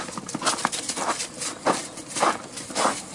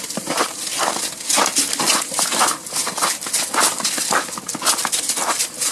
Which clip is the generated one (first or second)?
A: first